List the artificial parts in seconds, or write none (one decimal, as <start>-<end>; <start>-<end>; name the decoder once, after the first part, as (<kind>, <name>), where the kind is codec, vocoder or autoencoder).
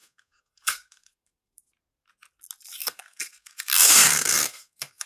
0.0-1.7 (codec, SNAC); 2.8-5.1